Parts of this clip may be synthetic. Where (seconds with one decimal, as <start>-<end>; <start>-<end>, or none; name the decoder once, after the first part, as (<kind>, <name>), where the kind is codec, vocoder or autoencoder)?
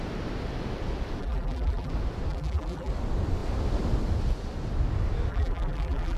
1.2-1.9 (vocoder, BigVGAN v2); 2.3-2.9; 5.3-6.2